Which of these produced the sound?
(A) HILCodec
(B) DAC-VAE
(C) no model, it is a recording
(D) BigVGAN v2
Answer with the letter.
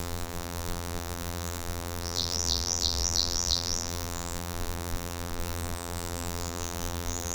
D